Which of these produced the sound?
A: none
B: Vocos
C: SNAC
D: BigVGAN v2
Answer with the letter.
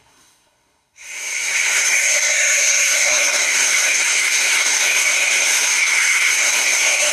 C